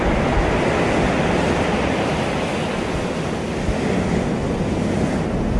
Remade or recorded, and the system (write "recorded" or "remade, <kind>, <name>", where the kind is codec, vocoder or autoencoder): recorded